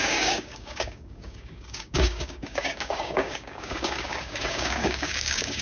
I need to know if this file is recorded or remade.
remade